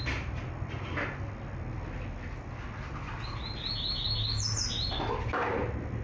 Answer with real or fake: real